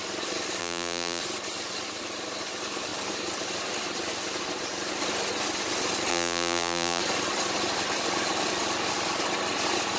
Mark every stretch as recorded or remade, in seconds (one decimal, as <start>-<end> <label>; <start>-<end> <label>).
0.0-0.6 recorded; 0.6-1.2 remade; 1.2-6.1 recorded; 6.1-7.0 remade; 7.0-10.0 recorded